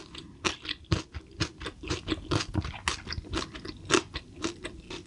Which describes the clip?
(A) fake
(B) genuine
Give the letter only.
B